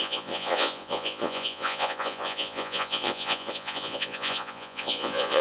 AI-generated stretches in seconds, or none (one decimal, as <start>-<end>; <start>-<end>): 0.0-5.4